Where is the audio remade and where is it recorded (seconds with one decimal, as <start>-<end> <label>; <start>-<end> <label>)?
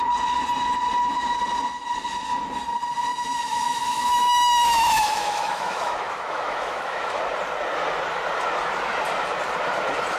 0.0-3.1 recorded; 3.1-7.2 remade; 7.2-10.2 recorded